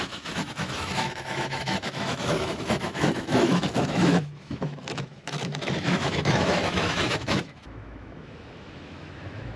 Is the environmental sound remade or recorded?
remade